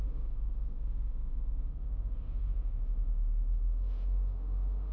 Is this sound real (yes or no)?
no